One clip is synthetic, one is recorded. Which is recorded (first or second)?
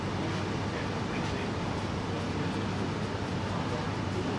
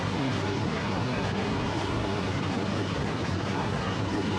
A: first